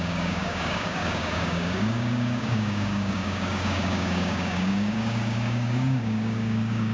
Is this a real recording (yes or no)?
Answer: no